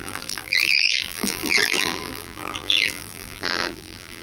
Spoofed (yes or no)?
yes